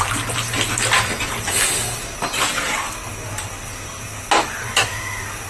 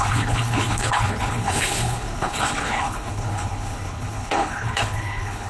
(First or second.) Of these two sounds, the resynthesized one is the second